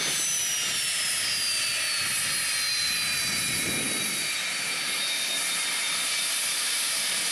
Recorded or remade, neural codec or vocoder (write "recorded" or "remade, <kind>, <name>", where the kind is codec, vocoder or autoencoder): recorded